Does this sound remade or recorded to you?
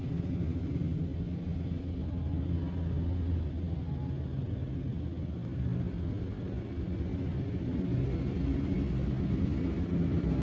recorded